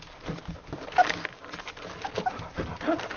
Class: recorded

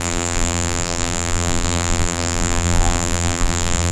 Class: remade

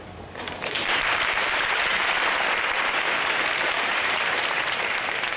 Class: remade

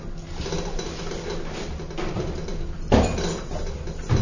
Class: recorded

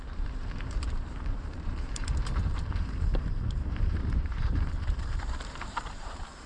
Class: remade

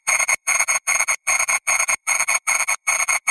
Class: remade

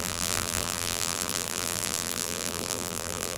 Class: remade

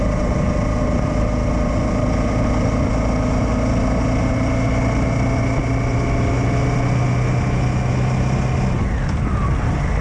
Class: recorded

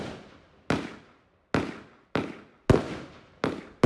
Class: recorded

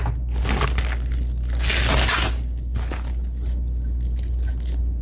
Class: recorded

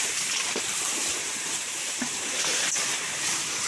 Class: remade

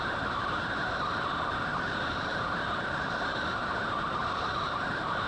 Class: remade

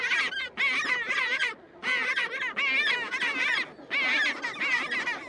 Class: recorded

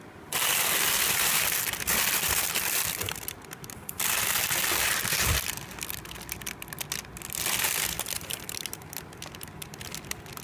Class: recorded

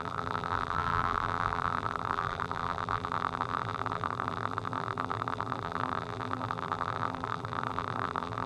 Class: remade